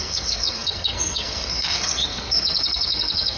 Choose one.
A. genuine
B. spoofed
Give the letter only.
B